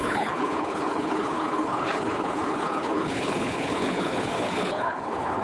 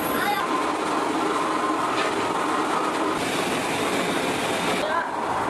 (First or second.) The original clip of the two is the second